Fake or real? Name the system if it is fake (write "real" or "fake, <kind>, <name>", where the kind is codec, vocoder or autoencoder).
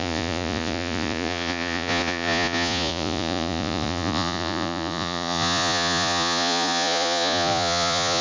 fake, vocoder, Vocos